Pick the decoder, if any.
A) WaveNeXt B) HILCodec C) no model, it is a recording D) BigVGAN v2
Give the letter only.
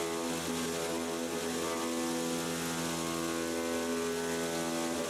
C